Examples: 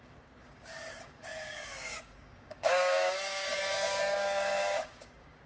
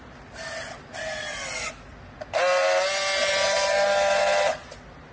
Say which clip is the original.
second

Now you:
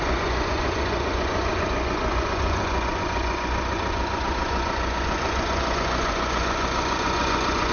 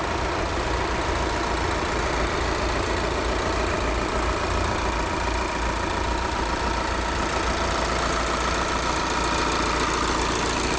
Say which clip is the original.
second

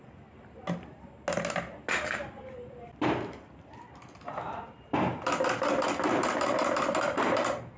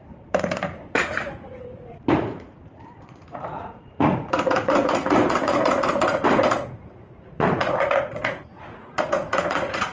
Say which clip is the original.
first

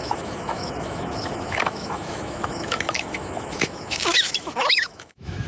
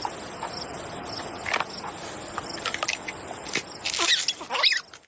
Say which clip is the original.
second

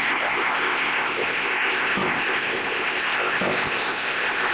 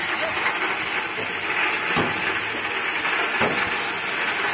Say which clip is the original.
second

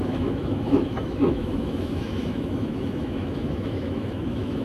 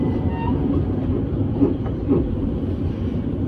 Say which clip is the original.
second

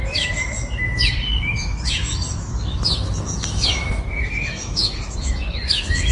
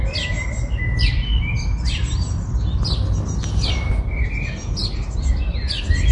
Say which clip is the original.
second